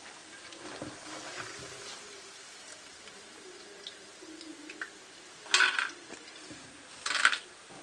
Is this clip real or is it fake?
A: real